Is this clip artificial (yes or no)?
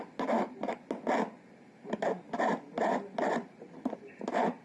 no